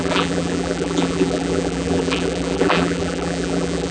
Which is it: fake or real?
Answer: fake